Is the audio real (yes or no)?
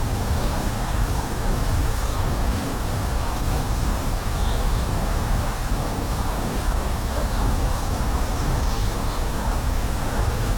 no